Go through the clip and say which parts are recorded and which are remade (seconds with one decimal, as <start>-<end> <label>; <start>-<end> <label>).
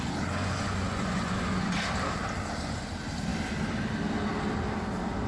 0.0-0.4 recorded; 0.4-1.7 remade; 1.7-5.3 recorded